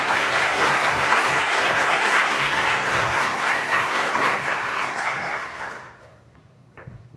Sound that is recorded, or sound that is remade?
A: remade